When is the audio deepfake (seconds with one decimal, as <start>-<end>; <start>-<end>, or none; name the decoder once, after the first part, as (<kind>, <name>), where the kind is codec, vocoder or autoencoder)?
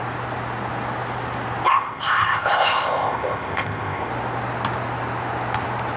1.7-4.1 (codec, ZipCodec)